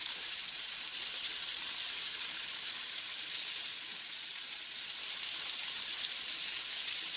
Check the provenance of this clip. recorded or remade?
remade